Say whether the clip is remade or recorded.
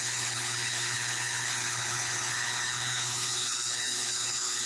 remade